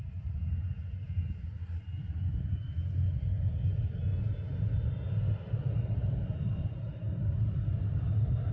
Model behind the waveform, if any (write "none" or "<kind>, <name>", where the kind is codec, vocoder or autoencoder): none